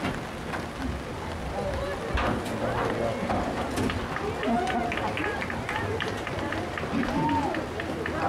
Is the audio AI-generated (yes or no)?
no